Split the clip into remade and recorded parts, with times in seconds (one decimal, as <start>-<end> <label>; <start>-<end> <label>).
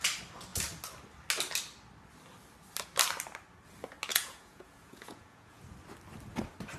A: 0.0-4.1 recorded; 4.1-5.6 remade; 5.6-6.8 recorded